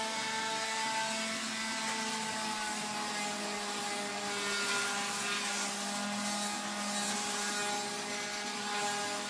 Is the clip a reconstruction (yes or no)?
no